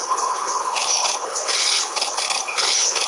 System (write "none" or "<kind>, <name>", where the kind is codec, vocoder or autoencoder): codec, HILCodec